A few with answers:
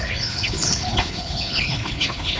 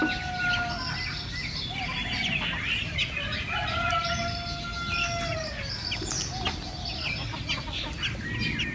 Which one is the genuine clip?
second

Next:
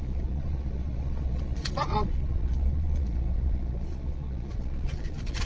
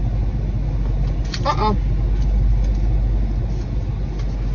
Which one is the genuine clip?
second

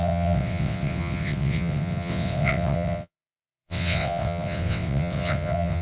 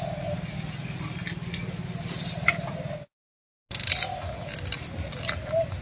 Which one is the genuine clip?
second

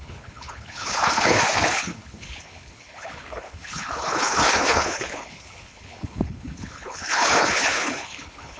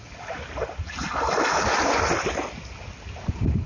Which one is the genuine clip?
second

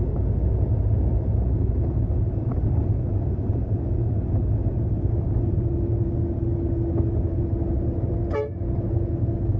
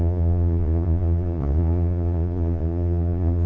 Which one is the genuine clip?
first